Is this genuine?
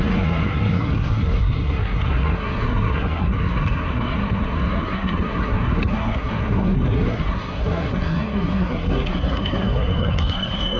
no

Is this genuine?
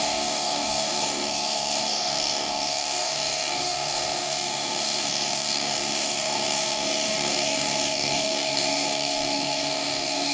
no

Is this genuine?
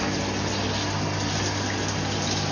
yes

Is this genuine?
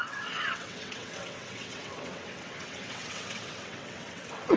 no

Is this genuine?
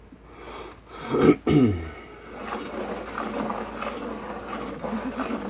yes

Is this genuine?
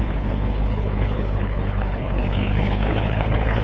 no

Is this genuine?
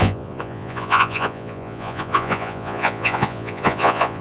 no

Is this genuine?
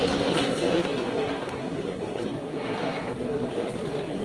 no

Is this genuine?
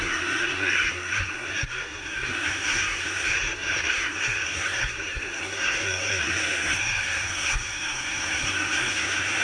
no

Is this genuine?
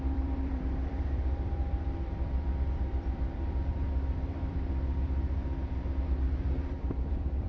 no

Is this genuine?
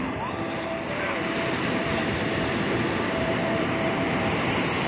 no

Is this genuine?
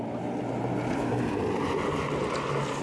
yes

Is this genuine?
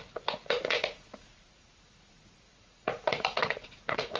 no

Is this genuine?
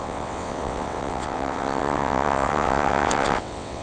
no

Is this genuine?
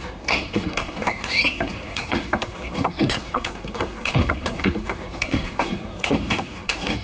no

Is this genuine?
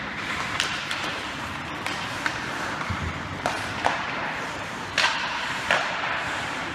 no